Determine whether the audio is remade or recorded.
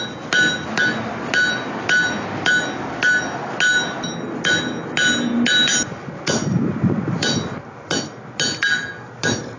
recorded